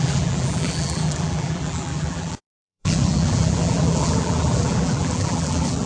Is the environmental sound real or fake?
fake